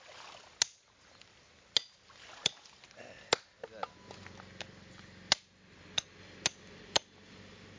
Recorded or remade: recorded